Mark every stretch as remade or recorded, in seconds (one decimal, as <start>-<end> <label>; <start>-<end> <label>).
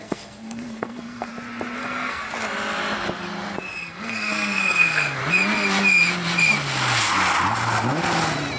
0.0-1.3 remade; 1.3-1.8 recorded; 1.8-2.2 remade; 2.2-3.8 recorded; 3.8-5.2 remade; 5.2-8.6 recorded